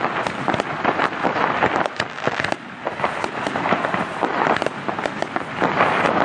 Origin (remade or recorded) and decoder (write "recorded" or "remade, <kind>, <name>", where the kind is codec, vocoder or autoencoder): recorded